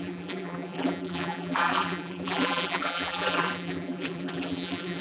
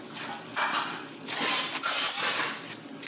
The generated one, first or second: first